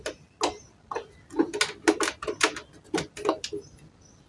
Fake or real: real